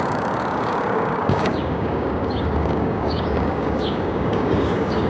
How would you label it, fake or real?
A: fake